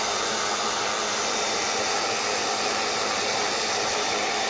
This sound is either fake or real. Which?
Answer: real